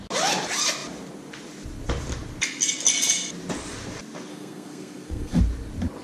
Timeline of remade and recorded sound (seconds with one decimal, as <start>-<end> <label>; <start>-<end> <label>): 0.0-4.3 recorded; 4.3-5.4 remade; 5.4-6.0 recorded